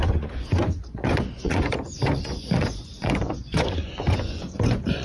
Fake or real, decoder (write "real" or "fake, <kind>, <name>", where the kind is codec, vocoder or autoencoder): fake, vocoder, Vocos